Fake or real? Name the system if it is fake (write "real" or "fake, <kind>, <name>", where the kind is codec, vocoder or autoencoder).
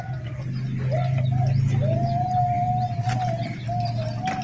real